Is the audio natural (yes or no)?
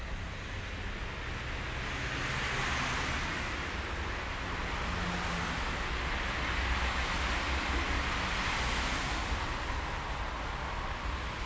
yes